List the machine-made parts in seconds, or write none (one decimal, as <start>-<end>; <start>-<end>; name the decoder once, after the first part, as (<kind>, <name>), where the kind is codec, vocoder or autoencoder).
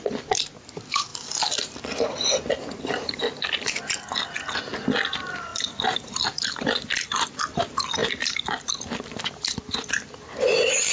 1.1-3.2 (vocoder, BigVGAN v2); 5.5-7.6; 8.0-9.4